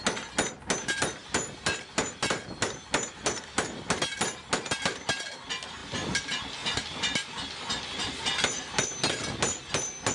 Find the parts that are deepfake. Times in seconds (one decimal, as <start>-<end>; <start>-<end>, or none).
none